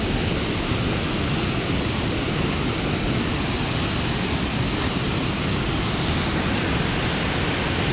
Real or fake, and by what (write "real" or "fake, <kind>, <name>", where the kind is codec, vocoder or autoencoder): real